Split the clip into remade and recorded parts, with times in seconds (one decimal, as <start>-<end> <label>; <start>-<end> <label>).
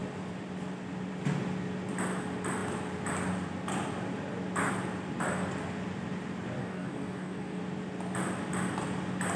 0.0-6.6 recorded; 6.6-7.6 remade; 7.6-9.4 recorded